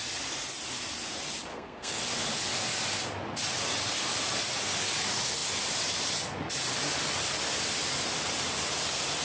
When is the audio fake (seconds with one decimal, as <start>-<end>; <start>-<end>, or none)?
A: 1.5-2.0

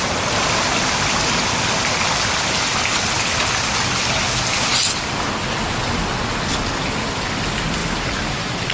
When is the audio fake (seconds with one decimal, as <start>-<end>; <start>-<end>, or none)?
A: none

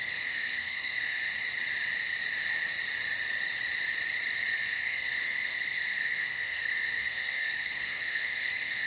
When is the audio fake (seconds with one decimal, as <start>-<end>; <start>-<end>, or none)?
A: 0.0-1.2; 4.6-8.9